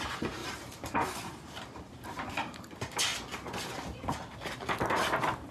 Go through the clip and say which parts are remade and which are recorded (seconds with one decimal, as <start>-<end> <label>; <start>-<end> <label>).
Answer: 0.0-0.4 recorded; 0.4-2.6 remade; 2.6-5.5 recorded